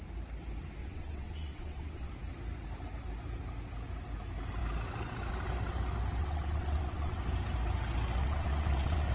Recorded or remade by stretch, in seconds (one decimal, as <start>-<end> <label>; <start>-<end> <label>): 0.0-0.8 recorded; 0.8-2.1 remade; 2.1-6.2 recorded; 6.2-7.2 remade; 7.2-8.2 recorded; 8.2-9.1 remade